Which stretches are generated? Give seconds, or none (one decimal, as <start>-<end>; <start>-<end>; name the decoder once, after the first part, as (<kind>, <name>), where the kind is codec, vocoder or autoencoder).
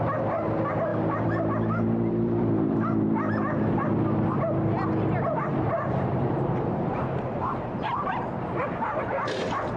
0.9-4.9 (vocoder, BigVGAN v2); 5.5-8.1; 8.6-9.1